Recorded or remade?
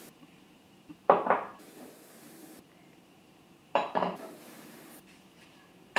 remade